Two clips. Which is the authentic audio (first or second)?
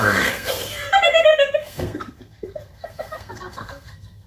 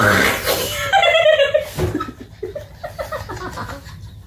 second